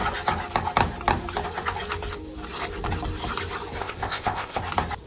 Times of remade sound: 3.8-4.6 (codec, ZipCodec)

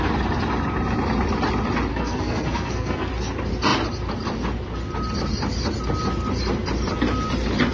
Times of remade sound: 1.9-3.1 (codec, SNAC)

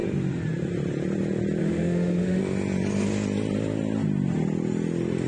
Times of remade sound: 1.6-2.4 (autoencoder, DAC-VAE)

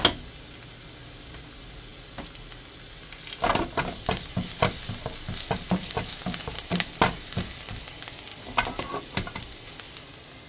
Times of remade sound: none

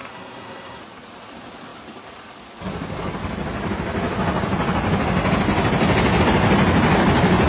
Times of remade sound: 0.0-0.8 (codec, SNAC)